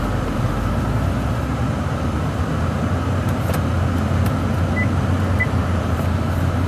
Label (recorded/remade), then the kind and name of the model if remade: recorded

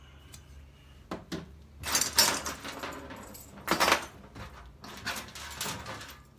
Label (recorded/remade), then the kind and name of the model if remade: recorded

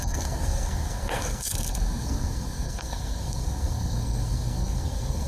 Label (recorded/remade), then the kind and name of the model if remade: remade, codec, SNAC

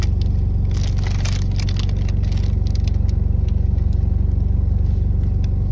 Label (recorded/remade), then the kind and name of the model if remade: recorded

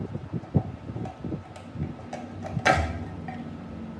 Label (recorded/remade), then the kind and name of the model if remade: recorded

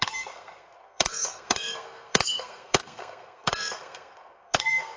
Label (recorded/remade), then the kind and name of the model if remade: remade, codec, SNAC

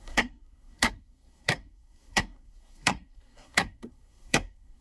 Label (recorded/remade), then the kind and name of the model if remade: remade, codec, SNAC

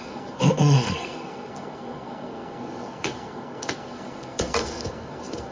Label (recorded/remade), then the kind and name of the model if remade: remade, codec, SNAC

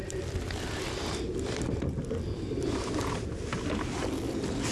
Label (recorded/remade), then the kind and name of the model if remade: recorded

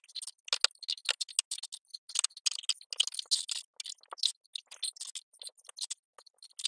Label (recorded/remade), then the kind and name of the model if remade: recorded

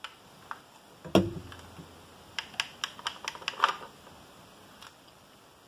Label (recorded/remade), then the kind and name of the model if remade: recorded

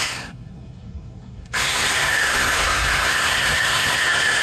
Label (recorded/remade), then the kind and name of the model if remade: remade, codec, SNAC